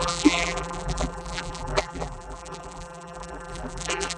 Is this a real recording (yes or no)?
no